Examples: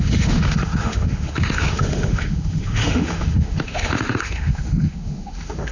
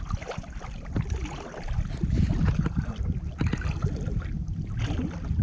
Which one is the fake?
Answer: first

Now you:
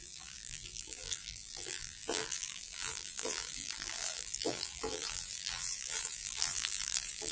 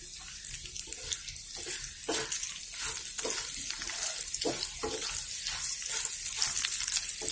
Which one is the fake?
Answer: first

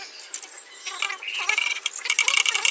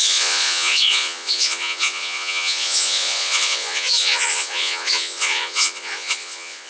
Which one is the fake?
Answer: second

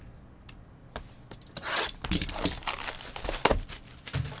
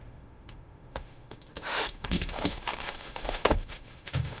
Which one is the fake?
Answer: second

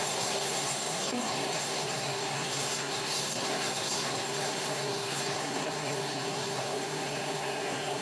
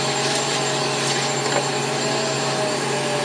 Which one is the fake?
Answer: first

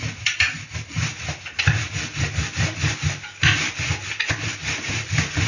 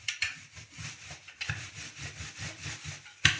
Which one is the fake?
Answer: second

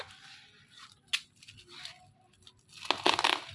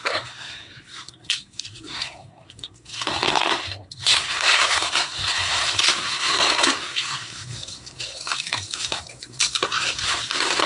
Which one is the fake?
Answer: second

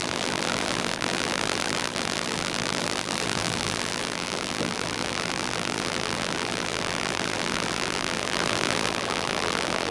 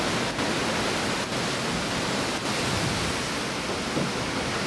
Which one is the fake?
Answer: first